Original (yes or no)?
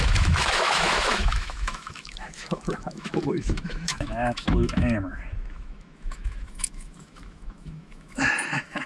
no